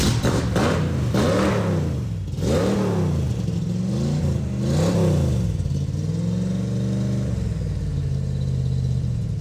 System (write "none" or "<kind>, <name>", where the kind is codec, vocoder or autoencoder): none